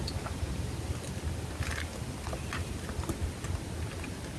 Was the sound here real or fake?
real